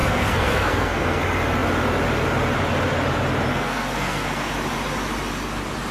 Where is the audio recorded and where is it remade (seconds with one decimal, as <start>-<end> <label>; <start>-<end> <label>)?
0.0-1.2 remade; 1.2-3.5 recorded; 3.5-4.5 remade; 4.5-5.9 recorded